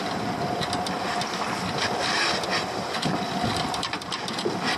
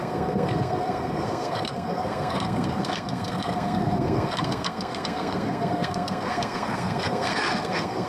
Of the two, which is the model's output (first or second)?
second